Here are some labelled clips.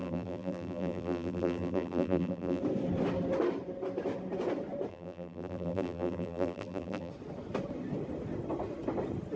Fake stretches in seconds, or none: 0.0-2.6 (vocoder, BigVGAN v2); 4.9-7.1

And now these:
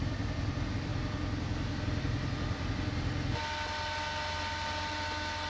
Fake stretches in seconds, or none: none